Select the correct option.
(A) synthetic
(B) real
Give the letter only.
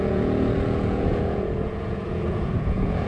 A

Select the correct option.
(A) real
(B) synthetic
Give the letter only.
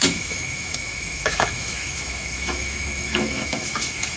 B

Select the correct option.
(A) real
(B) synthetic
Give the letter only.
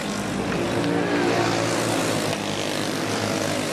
A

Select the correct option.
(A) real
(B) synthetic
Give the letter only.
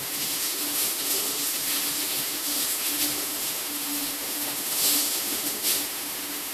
B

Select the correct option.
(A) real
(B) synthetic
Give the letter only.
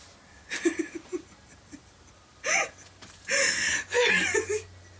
A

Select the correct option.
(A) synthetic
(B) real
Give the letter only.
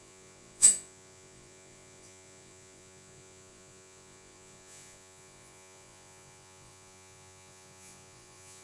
A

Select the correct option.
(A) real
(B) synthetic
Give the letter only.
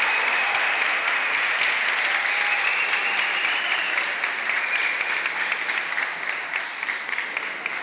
A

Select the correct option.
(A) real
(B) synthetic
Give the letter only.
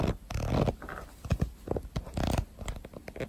A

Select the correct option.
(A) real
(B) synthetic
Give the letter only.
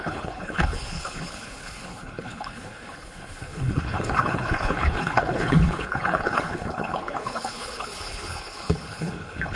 B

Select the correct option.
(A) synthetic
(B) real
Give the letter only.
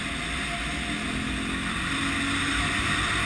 B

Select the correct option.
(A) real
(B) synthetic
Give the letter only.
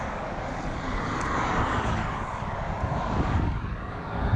B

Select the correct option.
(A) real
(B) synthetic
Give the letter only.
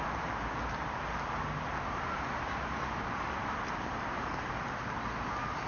A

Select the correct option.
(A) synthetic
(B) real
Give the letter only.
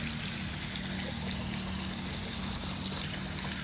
B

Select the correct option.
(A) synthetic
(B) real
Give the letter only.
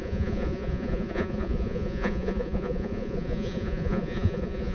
A